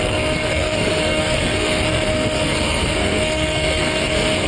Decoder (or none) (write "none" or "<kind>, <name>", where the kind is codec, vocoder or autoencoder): codec, SNAC